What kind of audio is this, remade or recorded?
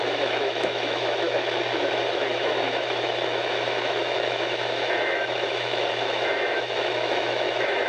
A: remade